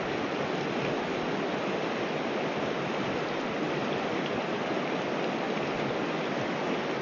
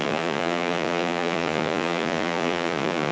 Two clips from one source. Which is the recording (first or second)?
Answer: first